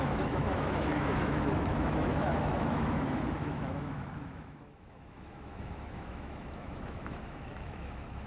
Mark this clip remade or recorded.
remade